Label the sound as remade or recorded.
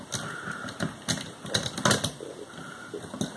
recorded